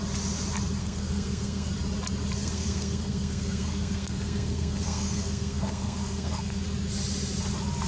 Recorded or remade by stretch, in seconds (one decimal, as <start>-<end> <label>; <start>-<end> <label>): 0.0-0.8 recorded; 0.8-1.7 remade; 1.7-2.4 recorded; 2.4-6.6 remade; 6.6-7.9 recorded